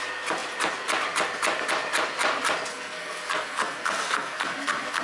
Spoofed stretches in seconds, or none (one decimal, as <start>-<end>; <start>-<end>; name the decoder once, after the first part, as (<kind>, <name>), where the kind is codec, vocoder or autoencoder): 2.7-5.0 (codec, SNAC)